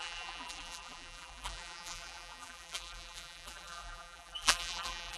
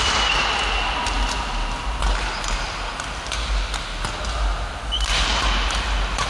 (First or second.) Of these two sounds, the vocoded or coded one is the first